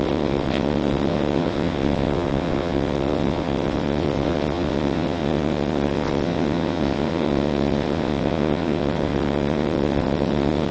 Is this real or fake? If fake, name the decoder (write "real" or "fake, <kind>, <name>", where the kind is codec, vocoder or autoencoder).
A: fake, vocoder, WaveNeXt